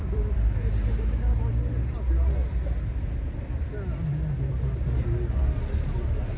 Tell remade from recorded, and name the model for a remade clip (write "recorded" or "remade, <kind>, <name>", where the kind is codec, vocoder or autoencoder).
recorded